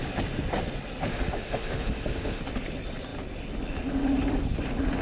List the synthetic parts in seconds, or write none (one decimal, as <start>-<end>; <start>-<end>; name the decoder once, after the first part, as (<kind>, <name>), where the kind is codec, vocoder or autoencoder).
1.1-2.4 (autoencoder, DAC-VAE)